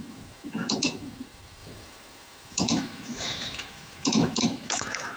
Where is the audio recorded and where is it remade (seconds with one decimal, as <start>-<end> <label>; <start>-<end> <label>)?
0.0-5.2 remade